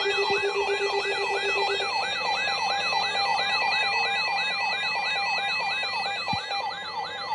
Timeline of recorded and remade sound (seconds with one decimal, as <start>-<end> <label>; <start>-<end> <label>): 0.0-3.3 recorded; 3.3-3.8 remade; 3.8-7.3 recorded